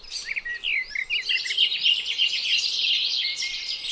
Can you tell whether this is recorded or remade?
recorded